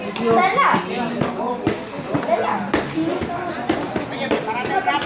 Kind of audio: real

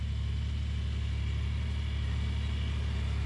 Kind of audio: real